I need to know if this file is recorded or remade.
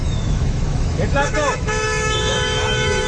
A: remade